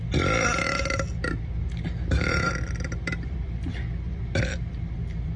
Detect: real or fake fake